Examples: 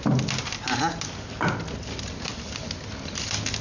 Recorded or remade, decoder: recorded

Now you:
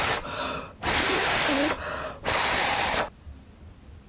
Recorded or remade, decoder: recorded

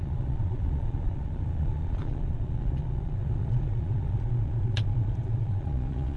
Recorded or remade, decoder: remade, vocoder, Vocos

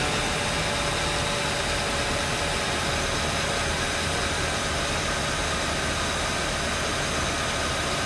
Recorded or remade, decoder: recorded